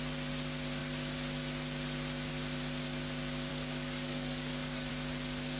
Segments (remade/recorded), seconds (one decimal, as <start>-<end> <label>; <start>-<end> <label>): 0.0-3.5 recorded; 3.5-4.9 remade; 4.9-5.6 recorded